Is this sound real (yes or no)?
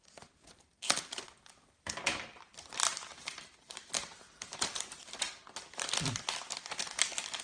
no